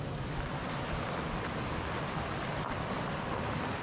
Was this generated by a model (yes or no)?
no